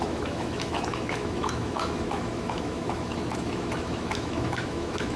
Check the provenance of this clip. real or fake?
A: fake